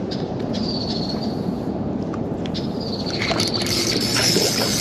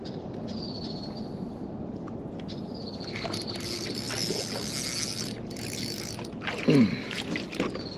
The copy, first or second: first